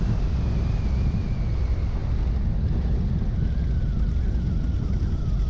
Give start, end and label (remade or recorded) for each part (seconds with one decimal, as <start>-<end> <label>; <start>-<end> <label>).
0.0-5.5 recorded